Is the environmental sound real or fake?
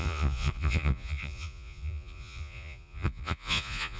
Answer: fake